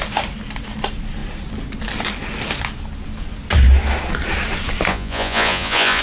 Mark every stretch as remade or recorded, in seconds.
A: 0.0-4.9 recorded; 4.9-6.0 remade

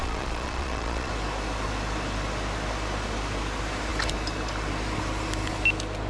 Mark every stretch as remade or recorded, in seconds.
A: 0.0-1.1 remade; 1.1-6.1 recorded

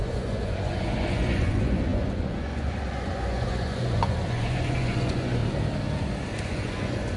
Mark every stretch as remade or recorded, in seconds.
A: 0.0-5.4 remade; 5.4-6.4 recorded; 6.4-7.2 remade

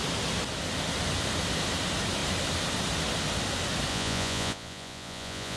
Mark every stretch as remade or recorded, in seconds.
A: 0.0-3.9 recorded; 3.9-5.6 remade